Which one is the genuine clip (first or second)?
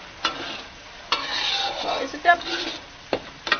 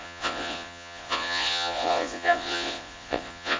first